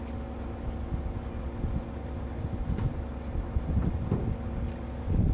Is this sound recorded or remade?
recorded